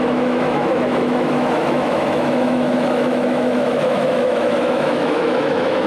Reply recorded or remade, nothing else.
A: remade